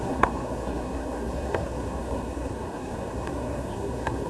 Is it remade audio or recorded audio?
remade